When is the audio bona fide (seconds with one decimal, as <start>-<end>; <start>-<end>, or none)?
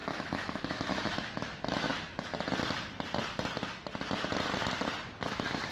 1.9-5.3